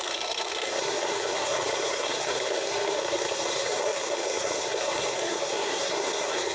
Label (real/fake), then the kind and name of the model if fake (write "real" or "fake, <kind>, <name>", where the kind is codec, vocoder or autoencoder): fake, codec, SNAC